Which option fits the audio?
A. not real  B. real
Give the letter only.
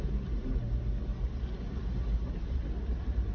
B